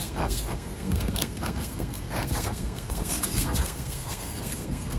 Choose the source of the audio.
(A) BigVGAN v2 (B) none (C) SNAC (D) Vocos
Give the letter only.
C